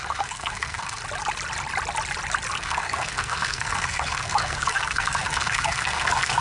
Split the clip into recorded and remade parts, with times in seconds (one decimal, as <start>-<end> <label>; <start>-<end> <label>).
0.0-1.0 remade; 1.0-2.6 recorded; 2.6-6.4 remade